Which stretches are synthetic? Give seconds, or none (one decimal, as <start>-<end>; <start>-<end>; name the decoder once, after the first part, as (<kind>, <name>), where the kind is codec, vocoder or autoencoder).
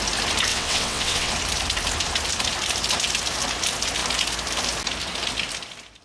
0.5-1.3 (vocoder, WaveNeXt)